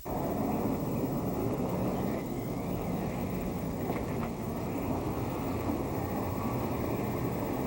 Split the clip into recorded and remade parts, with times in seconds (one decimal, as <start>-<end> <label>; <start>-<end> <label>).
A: 0.0-1.4 recorded; 1.4-5.9 remade; 5.9-7.7 recorded